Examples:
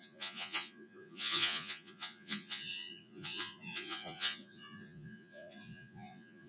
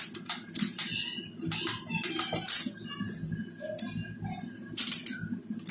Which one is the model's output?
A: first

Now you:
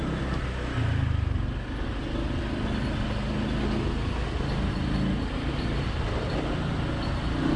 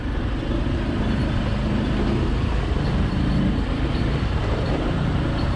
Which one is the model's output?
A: second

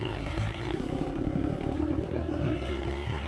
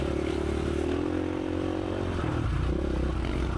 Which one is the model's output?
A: first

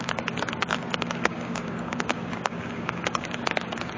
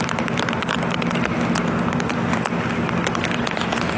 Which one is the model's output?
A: first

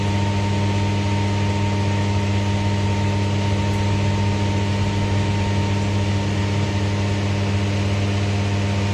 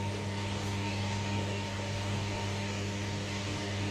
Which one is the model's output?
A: second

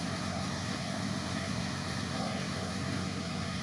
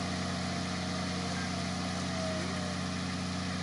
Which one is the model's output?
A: first